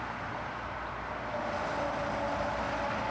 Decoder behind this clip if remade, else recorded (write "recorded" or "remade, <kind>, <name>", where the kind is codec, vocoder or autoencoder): recorded